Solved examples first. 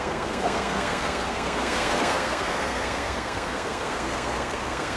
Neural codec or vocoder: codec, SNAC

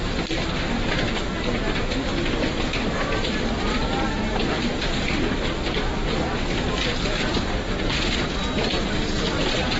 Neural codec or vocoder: none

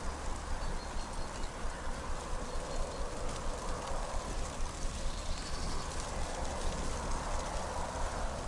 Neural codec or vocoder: none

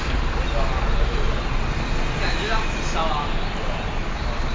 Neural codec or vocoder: none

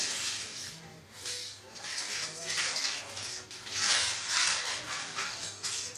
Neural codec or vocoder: codec, DAC